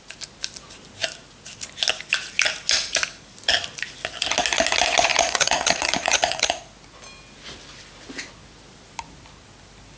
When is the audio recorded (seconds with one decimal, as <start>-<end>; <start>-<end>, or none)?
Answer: 0.0-5.1; 6.6-10.0